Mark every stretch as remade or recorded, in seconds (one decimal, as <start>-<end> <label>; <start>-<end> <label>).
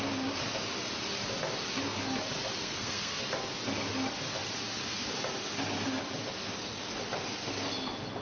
0.0-2.6 recorded; 2.6-3.2 remade; 3.2-8.2 recorded